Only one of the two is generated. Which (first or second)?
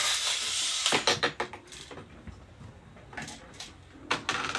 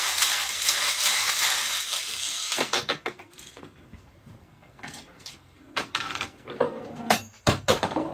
second